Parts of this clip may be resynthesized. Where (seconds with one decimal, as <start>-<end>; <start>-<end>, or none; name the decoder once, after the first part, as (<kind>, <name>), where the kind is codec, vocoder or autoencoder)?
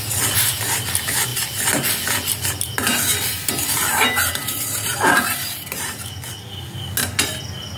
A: 3.7-6.0 (vocoder, BigVGAN v2)